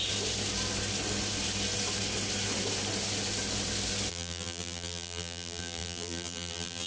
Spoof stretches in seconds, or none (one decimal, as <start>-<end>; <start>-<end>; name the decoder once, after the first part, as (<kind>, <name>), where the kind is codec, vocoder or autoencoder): 4.1-6.9 (vocoder, BigVGAN v2)